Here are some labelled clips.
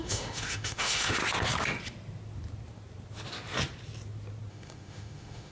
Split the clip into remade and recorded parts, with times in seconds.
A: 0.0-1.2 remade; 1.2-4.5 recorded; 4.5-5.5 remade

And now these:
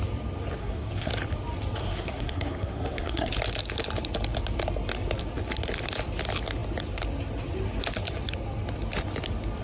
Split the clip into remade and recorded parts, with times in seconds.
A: 0.0-0.6 recorded; 0.6-1.1 remade; 1.1-1.8 recorded; 1.8-3.3 remade; 3.3-9.6 recorded

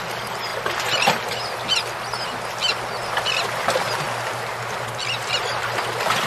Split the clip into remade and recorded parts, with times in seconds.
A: 0.0-6.3 recorded